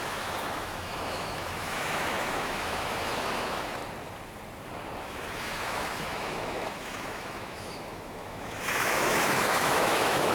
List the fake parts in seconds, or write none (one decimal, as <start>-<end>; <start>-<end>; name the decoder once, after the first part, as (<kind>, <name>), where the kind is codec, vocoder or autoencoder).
0.0-3.8 (autoencoder, DAC-VAE); 5.0-10.3

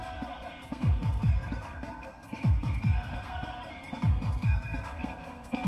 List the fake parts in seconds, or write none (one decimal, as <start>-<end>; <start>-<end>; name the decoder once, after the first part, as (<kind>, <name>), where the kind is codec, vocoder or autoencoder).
0.0-5.7 (codec, SNAC)

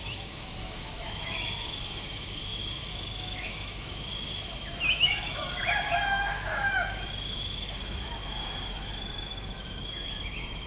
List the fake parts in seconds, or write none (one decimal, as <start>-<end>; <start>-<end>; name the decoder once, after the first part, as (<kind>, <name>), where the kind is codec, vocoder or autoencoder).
0.0-10.7 (autoencoder, DAC-VAE)

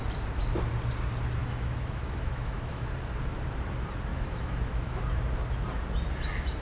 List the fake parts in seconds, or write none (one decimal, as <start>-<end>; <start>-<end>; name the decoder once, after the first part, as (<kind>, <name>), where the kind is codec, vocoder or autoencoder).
1.4-2.9 (autoencoder, DAC-VAE); 4.1-5.0

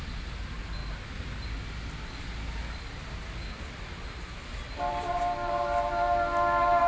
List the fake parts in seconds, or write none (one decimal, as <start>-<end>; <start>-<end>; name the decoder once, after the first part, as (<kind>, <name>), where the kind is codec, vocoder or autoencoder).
none

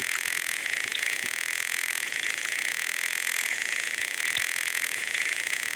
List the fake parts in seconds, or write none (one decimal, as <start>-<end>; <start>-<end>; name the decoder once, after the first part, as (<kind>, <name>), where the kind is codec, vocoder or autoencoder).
0.0-5.8 (vocoder, Vocos)

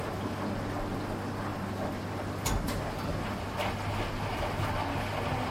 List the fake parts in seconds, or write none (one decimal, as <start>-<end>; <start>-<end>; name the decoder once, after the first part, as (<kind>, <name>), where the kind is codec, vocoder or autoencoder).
none